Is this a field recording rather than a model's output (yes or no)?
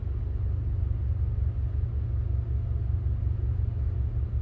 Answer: yes